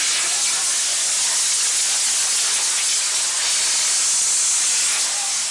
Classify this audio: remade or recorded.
recorded